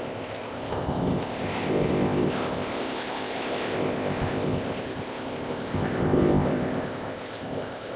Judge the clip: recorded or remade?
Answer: remade